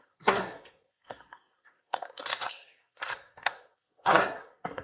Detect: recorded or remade remade